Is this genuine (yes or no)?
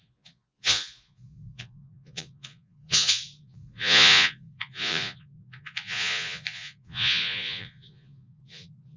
no